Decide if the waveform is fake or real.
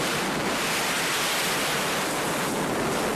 real